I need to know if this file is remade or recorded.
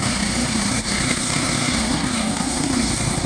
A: remade